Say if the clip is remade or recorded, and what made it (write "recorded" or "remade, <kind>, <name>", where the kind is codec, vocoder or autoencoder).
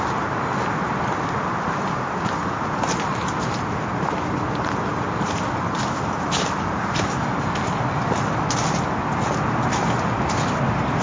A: recorded